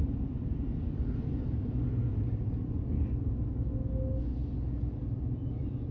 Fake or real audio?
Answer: real